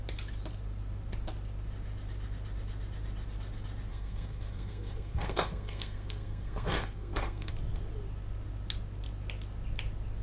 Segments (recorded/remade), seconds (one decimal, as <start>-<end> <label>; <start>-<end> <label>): 0.0-3.9 recorded; 3.9-7.5 remade; 7.5-10.2 recorded